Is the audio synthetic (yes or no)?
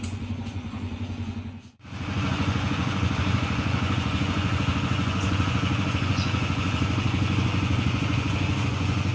yes